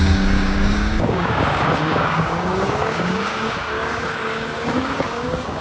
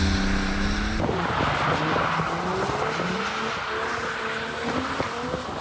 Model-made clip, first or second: first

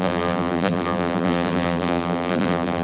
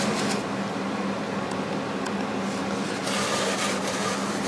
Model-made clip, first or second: first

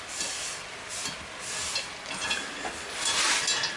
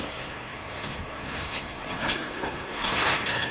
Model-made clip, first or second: second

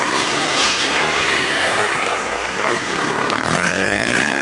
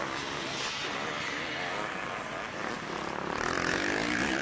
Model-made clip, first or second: first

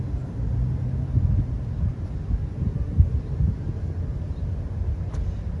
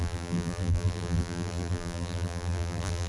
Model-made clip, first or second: second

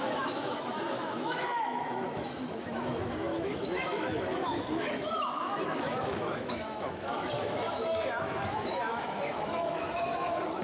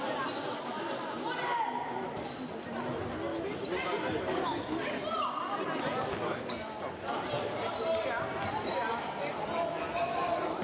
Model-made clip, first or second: first